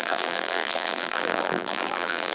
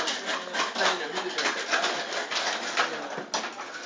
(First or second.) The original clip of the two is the second